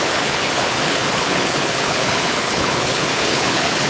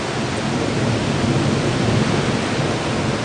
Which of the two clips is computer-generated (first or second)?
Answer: first